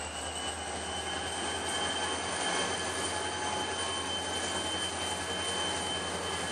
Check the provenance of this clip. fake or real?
real